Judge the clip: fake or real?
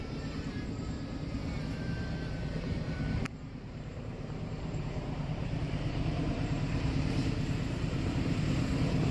fake